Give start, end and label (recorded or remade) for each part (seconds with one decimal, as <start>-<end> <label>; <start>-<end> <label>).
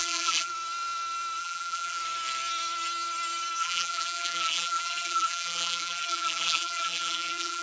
0.0-0.5 remade; 0.5-1.4 recorded; 1.4-2.0 remade; 2.0-3.6 recorded; 3.6-7.6 remade